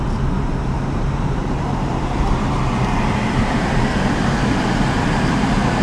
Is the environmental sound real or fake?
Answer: fake